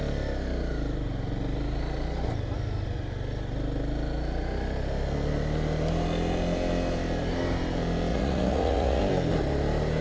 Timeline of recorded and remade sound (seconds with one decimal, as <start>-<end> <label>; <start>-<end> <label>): 0.0-8.1 recorded; 8.1-9.0 remade; 9.0-10.0 recorded